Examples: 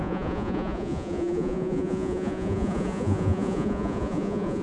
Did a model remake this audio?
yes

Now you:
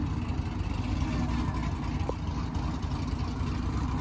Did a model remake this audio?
no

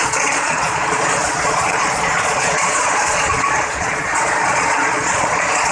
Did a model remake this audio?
yes